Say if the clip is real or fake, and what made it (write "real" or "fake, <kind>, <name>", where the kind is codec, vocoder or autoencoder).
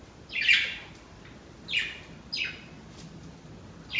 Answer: real